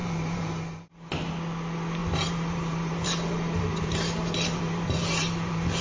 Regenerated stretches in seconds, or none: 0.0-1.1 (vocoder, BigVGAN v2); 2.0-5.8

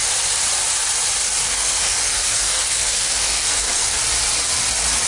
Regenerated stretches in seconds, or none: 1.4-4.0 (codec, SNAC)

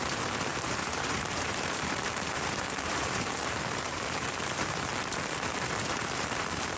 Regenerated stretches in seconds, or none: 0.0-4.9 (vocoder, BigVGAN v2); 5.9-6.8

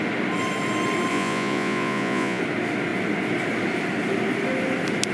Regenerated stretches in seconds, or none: 1.1-2.4 (vocoder, Vocos)